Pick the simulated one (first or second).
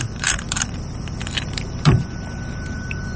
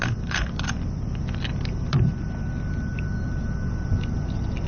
first